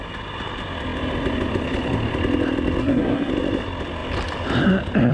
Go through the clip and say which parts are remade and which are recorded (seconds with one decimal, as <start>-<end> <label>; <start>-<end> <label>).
0.0-2.8 recorded; 2.8-3.3 remade; 3.3-5.1 recorded